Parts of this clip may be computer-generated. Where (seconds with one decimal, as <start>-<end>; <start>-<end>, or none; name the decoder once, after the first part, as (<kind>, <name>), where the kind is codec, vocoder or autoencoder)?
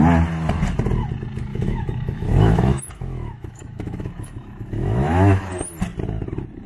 1.5-5.5 (autoencoder, DAC-VAE)